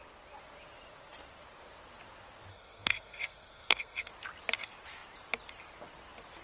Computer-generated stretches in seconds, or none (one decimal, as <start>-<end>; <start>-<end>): 2.5-4.1